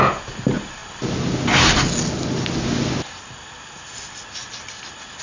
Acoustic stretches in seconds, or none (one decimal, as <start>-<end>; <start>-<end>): 0.0-5.2